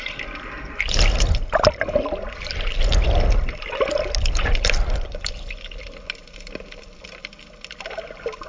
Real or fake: real